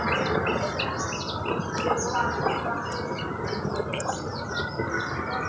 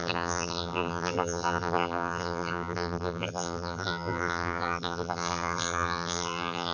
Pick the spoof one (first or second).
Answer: second